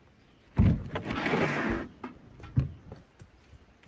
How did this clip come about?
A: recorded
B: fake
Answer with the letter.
A